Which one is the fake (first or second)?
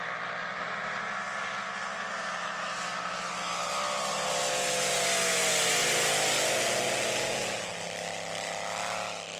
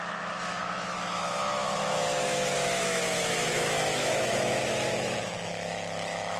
second